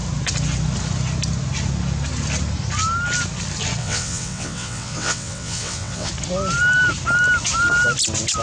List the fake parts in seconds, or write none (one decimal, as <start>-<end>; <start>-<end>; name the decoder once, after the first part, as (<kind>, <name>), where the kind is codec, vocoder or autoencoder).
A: 3.8-6.1 (vocoder, WaveNeXt)